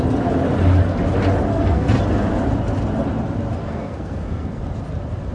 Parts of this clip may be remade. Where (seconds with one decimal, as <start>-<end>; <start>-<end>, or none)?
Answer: 1.5-2.0; 3.6-4.6